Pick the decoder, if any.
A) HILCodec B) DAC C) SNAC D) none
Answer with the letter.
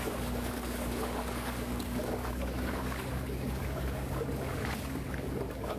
B